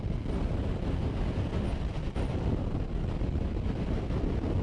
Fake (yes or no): no